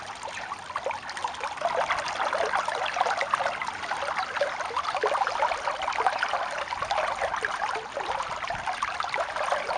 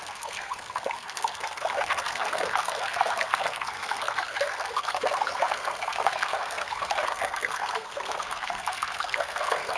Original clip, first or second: first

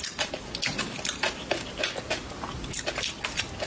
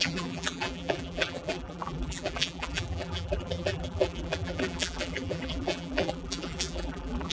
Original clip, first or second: first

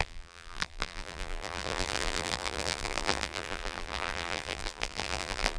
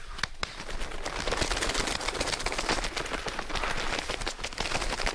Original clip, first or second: second